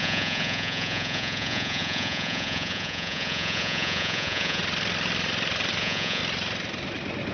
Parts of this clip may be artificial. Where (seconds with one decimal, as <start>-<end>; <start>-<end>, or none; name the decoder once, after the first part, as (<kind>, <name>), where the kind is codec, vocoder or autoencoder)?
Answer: 0.0-4.6 (vocoder, Vocos); 5.8-6.2